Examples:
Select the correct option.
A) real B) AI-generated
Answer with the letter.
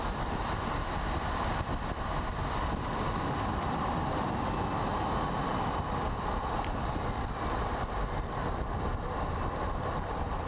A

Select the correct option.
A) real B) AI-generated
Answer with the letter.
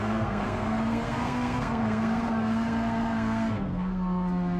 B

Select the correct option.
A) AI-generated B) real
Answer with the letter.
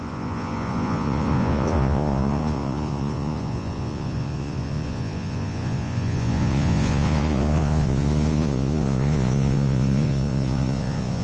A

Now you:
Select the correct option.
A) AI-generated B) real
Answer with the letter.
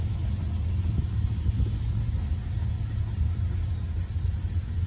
B